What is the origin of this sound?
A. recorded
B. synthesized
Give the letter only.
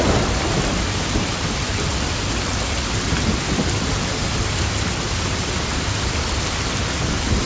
A